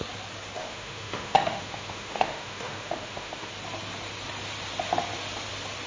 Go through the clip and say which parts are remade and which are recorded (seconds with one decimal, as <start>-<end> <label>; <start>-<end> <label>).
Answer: 0.0-0.6 recorded; 0.6-3.5 remade; 3.5-5.9 recorded